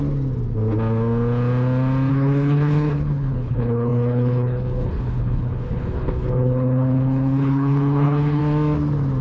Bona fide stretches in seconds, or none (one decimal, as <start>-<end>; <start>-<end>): 0.0-2.1; 8.4-9.2